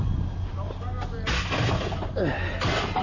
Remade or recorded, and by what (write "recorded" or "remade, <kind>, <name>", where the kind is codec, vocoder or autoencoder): recorded